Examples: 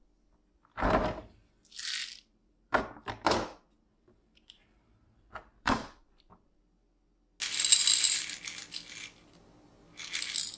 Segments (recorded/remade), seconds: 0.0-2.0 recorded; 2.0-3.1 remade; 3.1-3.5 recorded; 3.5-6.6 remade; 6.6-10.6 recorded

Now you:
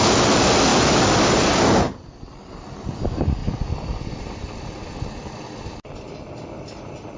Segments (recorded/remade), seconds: 0.0-7.2 recorded

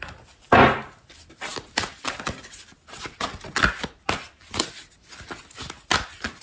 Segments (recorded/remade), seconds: 0.0-6.4 recorded

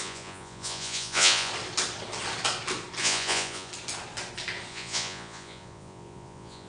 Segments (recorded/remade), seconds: 0.0-1.5 remade; 1.5-3.0 recorded; 3.0-3.7 remade; 3.7-4.7 recorded; 4.7-6.7 remade

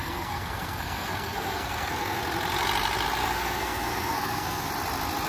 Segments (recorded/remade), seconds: 0.0-2.2 remade; 2.2-3.2 recorded; 3.2-4.7 remade; 4.7-5.3 recorded